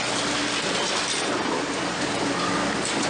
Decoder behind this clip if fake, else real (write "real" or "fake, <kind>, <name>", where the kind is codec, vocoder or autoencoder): real